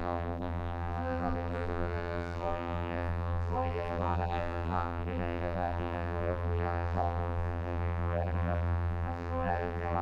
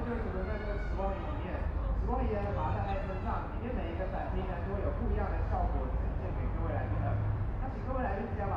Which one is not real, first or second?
first